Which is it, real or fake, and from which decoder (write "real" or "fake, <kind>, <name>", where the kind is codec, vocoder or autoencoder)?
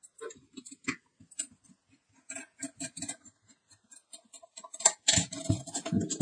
real